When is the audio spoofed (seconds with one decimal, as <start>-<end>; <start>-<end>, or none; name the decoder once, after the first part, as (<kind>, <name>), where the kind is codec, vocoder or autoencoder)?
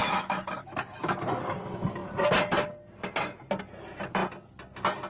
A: 0.0-1.6 (autoencoder, DAC-VAE)